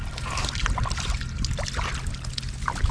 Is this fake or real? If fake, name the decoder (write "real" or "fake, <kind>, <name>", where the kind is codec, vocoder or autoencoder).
real